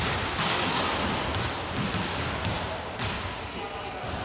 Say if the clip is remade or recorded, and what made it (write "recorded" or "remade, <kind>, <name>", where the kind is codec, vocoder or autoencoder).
recorded